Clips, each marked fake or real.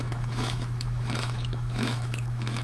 fake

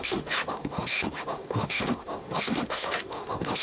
fake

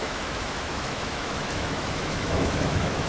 fake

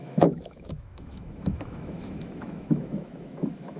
fake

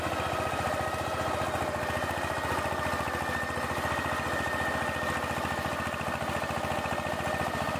real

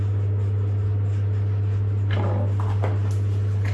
real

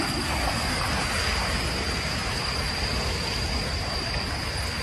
real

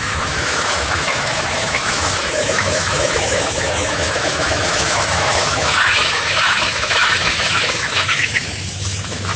fake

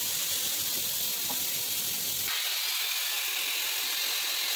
real